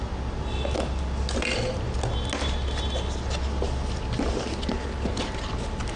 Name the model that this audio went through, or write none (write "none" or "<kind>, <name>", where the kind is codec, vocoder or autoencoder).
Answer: none